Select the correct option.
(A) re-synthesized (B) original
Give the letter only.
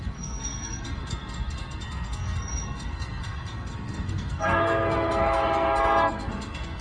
A